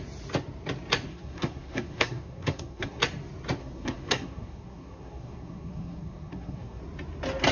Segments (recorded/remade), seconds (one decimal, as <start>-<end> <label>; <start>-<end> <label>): 0.0-1.1 recorded; 1.1-3.0 remade; 3.0-3.6 recorded; 3.6-6.8 remade; 6.8-7.5 recorded